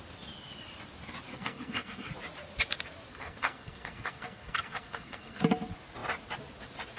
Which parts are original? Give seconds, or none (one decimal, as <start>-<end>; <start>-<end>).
0.0-1.3; 2.1-3.1; 5.4-7.0